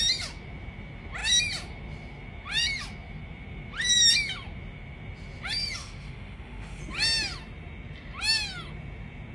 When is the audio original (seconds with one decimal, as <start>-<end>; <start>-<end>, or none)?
0.0-5.8; 6.8-9.3